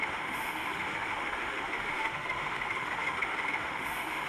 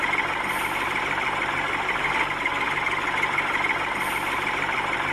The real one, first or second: second